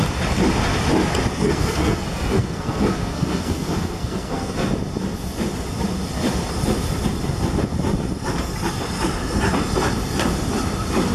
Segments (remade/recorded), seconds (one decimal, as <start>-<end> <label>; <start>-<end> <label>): 0.0-1.3 recorded; 1.3-4.7 remade; 4.7-11.1 recorded